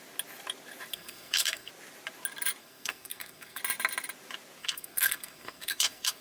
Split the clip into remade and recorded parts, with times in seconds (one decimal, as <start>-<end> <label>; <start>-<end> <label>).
0.0-0.9 recorded; 0.9-1.7 remade; 1.7-2.6 recorded; 2.6-3.6 remade; 3.6-4.6 recorded; 4.6-6.2 remade